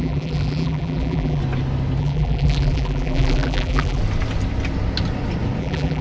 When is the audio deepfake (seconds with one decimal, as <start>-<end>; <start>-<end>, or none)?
0.0-1.4; 2.0-4.0; 5.6-6.0